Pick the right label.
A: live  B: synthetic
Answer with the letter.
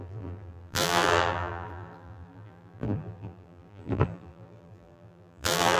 B